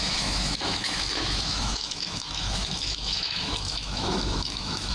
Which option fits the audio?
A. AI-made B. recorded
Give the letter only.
A